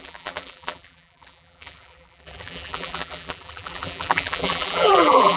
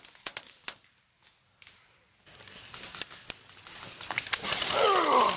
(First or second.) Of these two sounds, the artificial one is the first